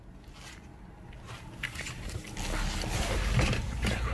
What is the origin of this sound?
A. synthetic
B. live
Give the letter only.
B